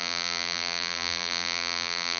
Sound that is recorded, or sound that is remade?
remade